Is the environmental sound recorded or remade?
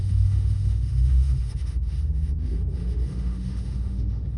remade